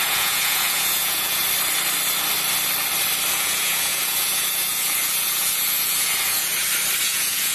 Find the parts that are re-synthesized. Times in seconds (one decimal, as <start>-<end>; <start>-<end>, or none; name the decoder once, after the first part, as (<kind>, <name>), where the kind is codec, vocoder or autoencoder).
0.0-1.4 (vocoder, Vocos); 3.3-6.5; 7.0-7.5